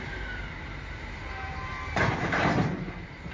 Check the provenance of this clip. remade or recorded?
remade